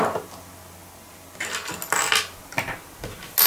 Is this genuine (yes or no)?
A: yes